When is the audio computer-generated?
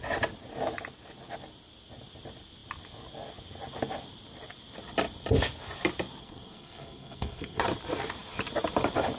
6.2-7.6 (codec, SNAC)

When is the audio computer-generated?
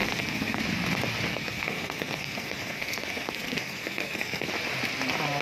0.0-0.6 (codec, SNAC); 1.3-4.5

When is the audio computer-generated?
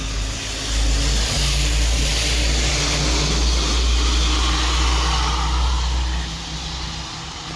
none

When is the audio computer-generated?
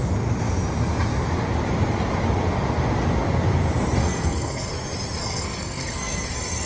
4.0-4.7 (codec, SNAC); 5.2-6.3